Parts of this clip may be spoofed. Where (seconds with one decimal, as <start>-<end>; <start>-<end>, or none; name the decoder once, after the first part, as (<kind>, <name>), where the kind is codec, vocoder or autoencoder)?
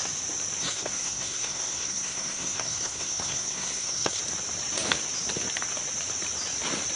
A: 0.6-4.2 (codec, SNAC)